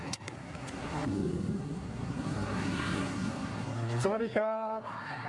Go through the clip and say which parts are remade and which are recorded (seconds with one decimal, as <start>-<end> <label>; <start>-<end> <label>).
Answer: 0.0-5.3 remade